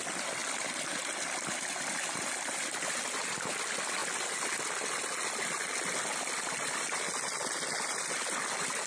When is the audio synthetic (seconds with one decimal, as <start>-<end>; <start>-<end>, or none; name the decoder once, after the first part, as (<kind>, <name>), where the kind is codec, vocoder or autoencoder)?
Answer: none